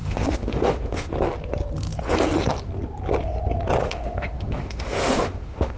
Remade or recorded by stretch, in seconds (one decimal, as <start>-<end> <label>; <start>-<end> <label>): 0.0-1.1 remade; 1.1-3.8 recorded; 3.8-5.8 remade